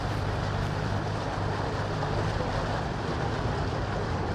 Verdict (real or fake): real